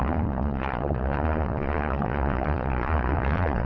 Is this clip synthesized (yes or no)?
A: yes